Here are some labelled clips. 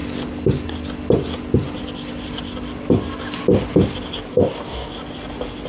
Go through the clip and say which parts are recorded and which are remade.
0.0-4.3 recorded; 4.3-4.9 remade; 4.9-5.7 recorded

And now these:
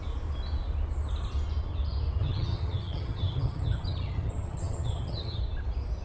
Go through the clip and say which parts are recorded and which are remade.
0.0-2.2 recorded; 2.2-5.4 remade; 5.4-6.0 recorded

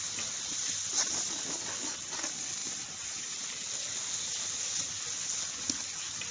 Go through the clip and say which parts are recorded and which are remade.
0.0-2.6 recorded; 2.6-3.4 remade; 3.4-6.3 recorded

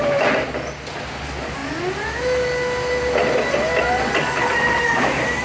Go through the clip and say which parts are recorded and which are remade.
0.0-5.4 recorded